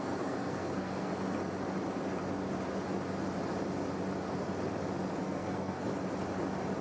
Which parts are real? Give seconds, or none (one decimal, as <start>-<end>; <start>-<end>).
1.1-5.2; 5.9-6.8